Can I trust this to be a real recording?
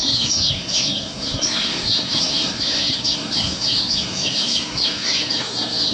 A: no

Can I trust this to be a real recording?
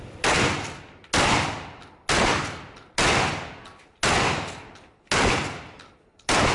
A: yes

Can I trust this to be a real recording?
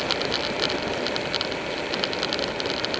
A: yes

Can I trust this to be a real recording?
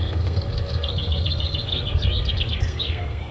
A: no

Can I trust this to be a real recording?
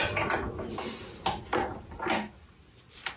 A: yes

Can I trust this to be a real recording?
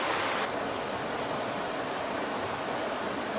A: yes